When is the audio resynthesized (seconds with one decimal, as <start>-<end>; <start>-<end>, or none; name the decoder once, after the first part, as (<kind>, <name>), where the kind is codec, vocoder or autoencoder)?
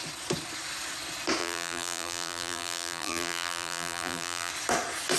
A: 1.4-4.5 (vocoder, BigVGAN v2)